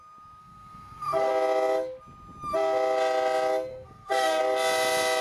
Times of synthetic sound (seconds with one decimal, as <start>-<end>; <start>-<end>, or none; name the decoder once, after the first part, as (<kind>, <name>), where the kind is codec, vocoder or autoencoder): 0.4-1.3 (codec, SNAC); 3.7-4.4